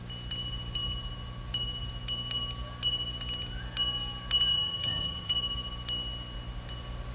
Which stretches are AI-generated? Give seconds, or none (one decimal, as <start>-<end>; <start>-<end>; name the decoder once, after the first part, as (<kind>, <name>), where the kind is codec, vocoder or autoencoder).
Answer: 4.5-5.3 (vocoder, HiFi-GAN)